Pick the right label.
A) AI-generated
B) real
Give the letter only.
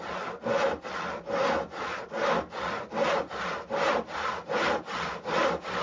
B